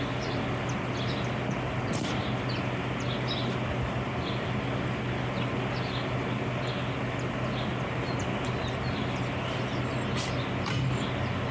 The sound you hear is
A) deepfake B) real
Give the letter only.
B